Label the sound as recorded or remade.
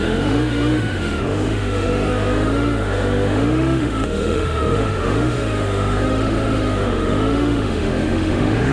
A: remade